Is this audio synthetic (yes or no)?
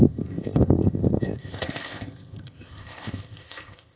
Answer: yes